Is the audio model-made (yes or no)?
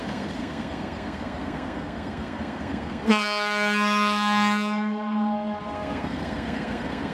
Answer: yes